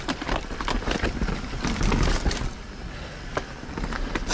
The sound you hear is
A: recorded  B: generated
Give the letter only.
A